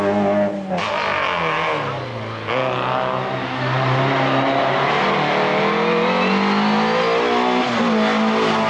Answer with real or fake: real